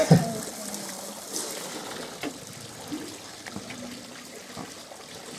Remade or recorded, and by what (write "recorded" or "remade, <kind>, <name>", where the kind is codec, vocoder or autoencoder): recorded